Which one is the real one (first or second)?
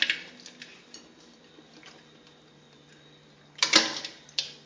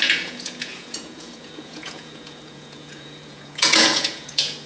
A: first